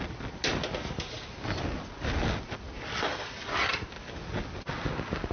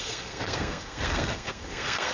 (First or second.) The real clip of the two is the first